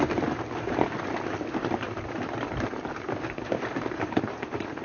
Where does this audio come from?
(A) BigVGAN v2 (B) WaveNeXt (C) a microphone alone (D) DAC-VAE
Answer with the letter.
A